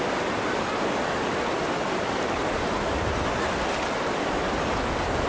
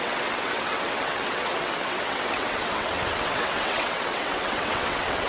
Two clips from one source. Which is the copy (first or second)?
second